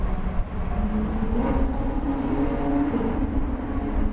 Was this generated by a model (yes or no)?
no